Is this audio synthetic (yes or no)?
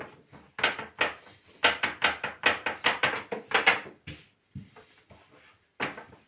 no